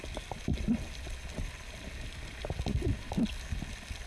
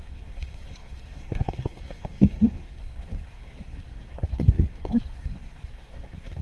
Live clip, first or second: first